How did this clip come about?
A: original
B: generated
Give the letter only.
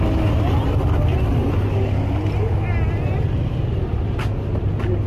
A